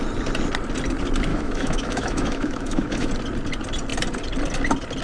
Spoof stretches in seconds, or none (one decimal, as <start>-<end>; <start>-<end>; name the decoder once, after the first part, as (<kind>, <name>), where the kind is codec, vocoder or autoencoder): 1.3-3.1 (autoencoder, DAC-VAE)